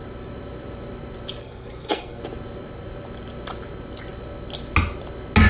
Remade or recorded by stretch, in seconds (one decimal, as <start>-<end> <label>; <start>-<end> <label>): 0.0-1.4 recorded; 1.4-2.2 remade; 2.2-5.5 recorded